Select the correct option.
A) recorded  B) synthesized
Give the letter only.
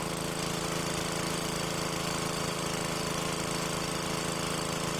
A